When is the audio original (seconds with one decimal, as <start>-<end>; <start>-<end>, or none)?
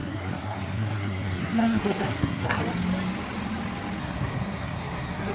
2.6-4.0